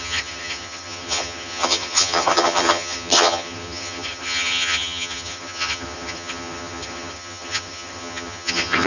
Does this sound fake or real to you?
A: fake